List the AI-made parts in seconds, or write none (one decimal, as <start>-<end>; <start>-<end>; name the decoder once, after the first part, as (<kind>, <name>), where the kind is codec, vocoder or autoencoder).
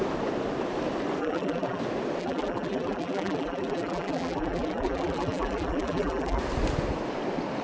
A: 1.2-1.8 (vocoder, BigVGAN v2); 2.2-6.4